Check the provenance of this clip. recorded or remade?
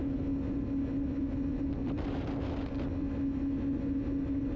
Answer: recorded